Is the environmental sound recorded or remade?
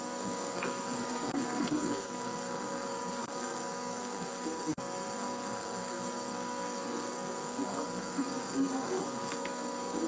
remade